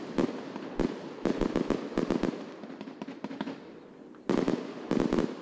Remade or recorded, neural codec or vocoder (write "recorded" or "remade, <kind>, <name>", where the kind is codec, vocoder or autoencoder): recorded